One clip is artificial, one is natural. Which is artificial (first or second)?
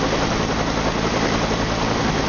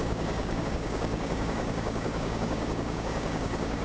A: second